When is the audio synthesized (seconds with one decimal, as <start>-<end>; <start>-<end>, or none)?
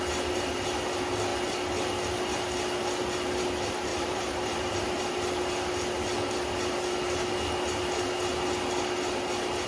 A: 3.9-5.0